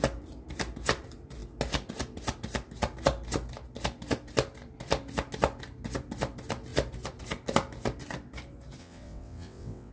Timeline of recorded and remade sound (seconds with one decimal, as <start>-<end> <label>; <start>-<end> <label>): 0.0-8.8 recorded; 8.8-9.9 remade

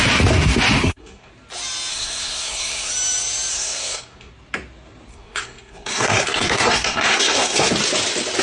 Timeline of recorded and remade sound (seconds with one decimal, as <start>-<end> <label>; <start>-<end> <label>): 0.0-0.8 recorded; 0.8-1.3 remade; 1.3-1.9 recorded; 1.9-2.9 remade; 2.9-3.5 recorded; 3.5-4.3 remade; 4.3-5.1 recorded; 5.1-7.7 remade; 7.7-8.4 recorded

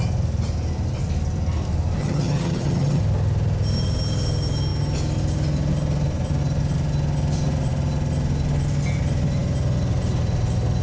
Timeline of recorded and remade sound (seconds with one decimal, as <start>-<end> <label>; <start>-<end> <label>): 0.0-2.0 recorded; 2.0-3.0 remade; 3.0-10.8 recorded

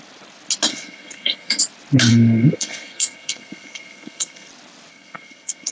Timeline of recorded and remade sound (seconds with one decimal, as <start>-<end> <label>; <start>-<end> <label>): 0.0-0.7 recorded; 0.7-1.6 remade; 1.6-2.1 recorded; 2.1-4.5 remade; 4.5-4.9 recorded; 4.9-5.7 remade

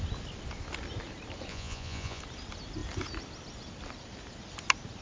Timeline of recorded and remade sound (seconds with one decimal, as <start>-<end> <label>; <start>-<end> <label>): 0.0-1.5 recorded; 1.5-2.2 remade; 2.2-5.0 recorded

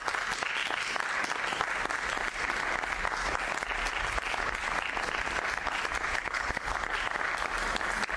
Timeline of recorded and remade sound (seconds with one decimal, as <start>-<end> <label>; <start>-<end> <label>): 0.0-6.1 recorded; 6.1-6.7 remade; 6.7-8.2 recorded

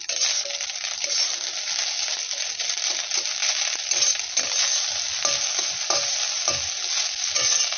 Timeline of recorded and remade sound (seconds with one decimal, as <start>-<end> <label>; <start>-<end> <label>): 0.0-7.8 recorded

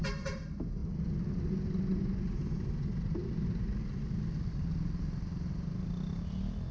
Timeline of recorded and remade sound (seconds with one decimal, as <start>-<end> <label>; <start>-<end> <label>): 0.0-6.7 recorded